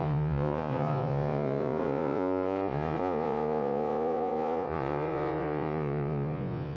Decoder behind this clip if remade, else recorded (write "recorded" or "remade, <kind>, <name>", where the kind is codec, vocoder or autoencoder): remade, vocoder, Vocos